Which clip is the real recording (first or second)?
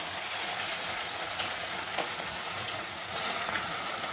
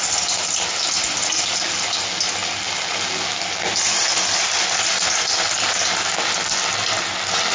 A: second